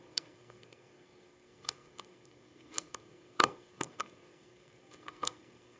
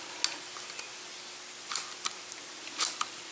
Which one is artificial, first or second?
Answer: first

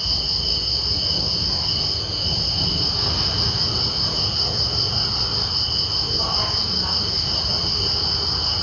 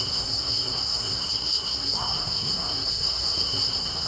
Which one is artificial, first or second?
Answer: second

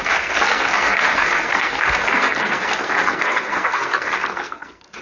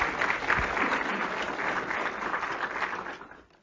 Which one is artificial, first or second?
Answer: first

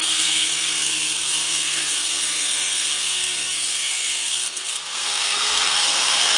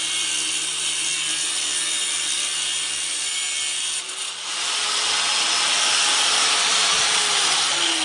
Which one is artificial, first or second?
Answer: first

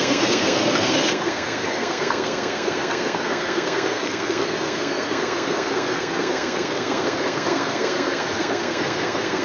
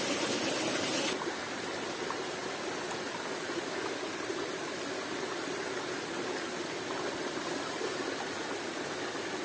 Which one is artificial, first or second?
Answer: first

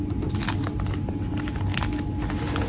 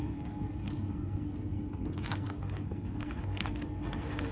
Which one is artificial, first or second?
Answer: second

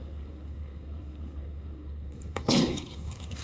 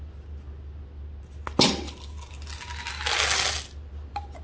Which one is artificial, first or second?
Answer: first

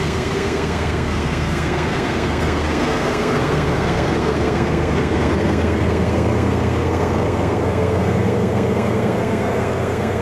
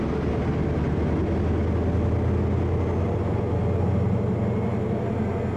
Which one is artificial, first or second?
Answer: first